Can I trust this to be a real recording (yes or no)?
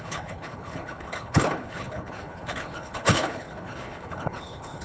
no